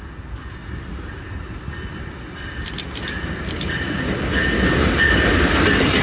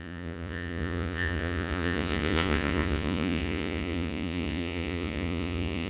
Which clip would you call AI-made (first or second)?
second